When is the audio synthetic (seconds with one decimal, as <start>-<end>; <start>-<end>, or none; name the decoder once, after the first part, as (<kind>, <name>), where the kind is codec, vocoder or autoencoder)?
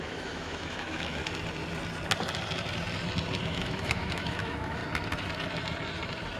0.0-1.2 (autoencoder, DAC-VAE); 3.5-4.8